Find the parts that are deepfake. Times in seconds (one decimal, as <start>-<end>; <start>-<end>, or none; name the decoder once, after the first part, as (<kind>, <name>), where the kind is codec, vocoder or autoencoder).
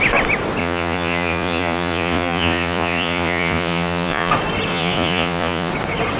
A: 0.6-4.3 (vocoder, Vocos); 4.7-5.7